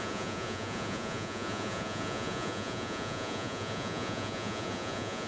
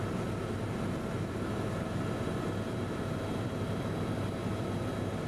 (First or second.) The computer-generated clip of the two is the first